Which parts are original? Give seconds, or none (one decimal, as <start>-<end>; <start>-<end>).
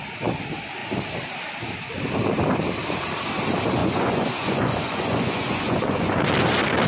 0.0-3.8; 6.2-6.9